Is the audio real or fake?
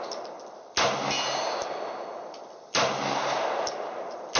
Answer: real